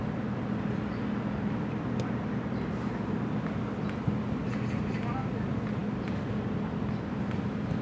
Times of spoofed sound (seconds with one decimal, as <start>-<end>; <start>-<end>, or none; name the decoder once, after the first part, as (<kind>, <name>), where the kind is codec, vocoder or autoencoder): none